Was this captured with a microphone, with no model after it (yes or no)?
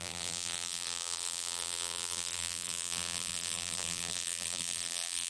no